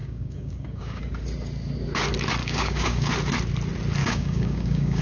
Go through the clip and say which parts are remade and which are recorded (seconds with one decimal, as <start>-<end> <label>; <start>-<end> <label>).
0.0-1.0 remade; 1.0-2.4 recorded; 2.4-3.1 remade; 3.1-4.0 recorded; 4.0-5.0 remade